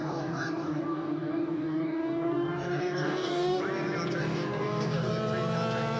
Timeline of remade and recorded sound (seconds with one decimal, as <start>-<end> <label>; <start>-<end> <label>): 0.0-3.6 remade; 3.6-4.2 recorded; 4.2-5.1 remade; 5.1-6.0 recorded